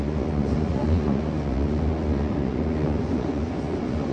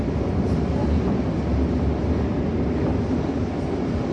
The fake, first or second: first